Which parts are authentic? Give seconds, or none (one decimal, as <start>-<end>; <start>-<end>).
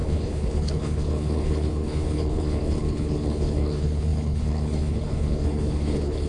none